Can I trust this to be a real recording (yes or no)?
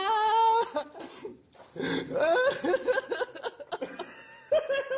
yes